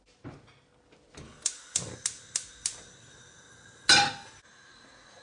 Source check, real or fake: real